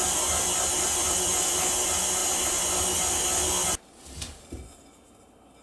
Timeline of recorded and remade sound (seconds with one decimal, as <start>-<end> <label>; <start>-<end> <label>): 0.0-5.6 recorded